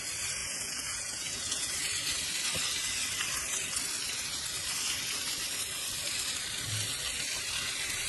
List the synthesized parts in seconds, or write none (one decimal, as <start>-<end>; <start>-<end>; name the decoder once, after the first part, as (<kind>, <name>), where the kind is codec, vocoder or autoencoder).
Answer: 0.4-1.7 (vocoder, Vocos)